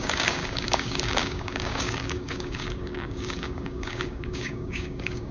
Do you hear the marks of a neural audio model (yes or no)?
yes